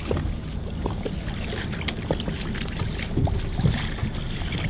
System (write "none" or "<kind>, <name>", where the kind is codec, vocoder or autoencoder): none